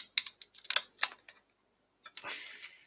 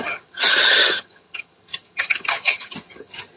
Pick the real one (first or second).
first